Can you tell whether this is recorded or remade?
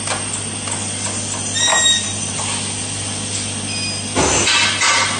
recorded